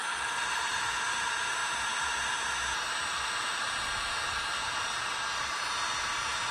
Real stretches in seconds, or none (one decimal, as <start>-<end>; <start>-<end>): 0.9-6.5